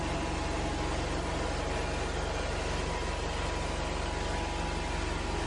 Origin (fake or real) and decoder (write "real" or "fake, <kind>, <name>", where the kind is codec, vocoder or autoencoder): real